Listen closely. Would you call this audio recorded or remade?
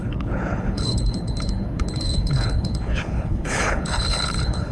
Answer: remade